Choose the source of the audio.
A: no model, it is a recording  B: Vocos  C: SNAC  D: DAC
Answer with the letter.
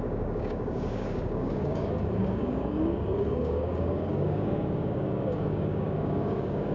D